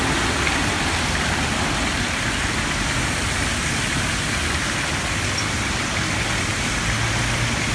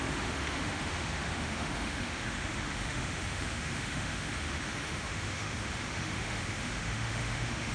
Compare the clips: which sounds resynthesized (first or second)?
second